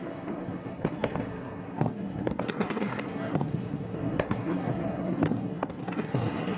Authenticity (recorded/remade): remade